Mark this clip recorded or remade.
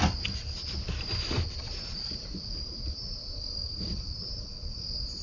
recorded